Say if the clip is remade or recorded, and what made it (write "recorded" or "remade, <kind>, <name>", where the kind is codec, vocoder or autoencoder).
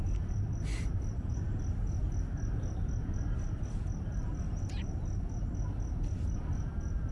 recorded